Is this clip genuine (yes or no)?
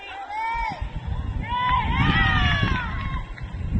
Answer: yes